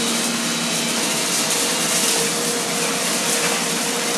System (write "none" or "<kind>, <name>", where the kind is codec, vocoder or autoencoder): none